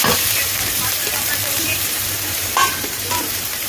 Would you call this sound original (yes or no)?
no